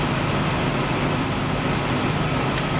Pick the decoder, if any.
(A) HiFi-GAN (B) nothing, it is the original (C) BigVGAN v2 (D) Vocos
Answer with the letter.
B